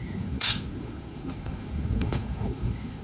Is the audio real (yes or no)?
no